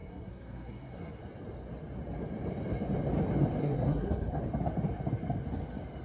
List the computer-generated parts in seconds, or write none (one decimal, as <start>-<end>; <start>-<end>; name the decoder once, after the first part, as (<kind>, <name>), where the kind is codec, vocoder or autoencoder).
0.0-1.2 (codec, SNAC); 3.6-4.4